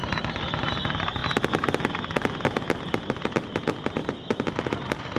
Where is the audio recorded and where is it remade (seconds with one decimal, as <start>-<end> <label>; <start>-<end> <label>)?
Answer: 0.0-5.2 remade